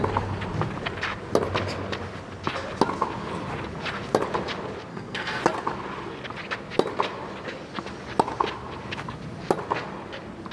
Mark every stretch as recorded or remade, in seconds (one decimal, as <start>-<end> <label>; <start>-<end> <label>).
0.0-4.9 recorded; 4.9-5.4 remade; 5.4-10.5 recorded